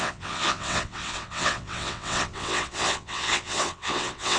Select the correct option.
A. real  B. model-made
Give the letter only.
B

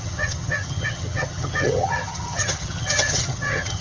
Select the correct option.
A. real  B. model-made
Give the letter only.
B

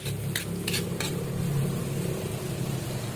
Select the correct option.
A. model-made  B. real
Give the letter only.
B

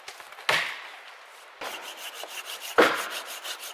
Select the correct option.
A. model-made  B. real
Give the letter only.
B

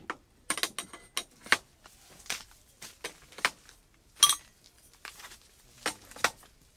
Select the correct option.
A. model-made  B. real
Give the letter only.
B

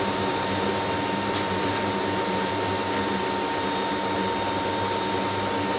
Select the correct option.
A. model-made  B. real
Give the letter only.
B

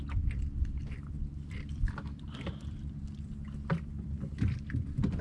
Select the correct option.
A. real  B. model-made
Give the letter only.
B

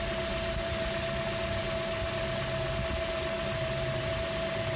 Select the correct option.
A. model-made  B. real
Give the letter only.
B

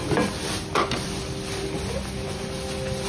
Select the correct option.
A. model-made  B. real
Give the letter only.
B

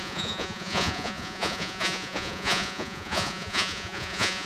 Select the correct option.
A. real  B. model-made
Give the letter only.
B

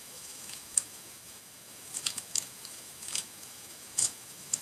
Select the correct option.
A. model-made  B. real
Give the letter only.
A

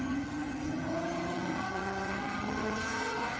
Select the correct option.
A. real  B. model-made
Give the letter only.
B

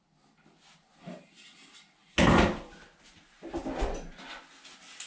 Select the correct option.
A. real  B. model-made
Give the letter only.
A